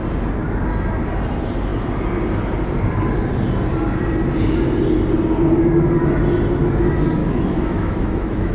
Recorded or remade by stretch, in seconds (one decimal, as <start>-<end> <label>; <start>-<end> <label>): 0.0-7.2 recorded; 7.2-8.5 remade